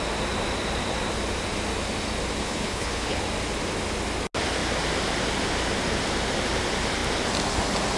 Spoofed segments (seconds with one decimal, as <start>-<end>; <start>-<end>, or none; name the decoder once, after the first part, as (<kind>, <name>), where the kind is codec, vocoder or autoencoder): 2.4-3.2 (codec, HILCodec)